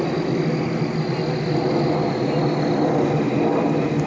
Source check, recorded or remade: recorded